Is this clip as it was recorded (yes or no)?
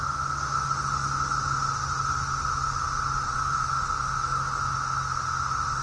yes